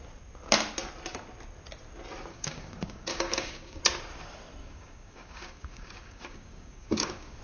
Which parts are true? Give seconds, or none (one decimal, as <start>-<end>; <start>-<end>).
0.0-2.3; 3.8-4.6